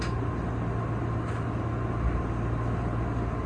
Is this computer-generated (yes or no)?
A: no